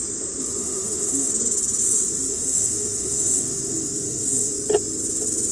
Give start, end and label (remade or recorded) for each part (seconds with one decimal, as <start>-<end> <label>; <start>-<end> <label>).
0.0-0.6 recorded; 0.6-1.3 remade; 1.3-2.3 recorded; 2.3-4.5 remade; 4.5-5.5 recorded